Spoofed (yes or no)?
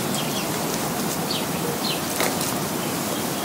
no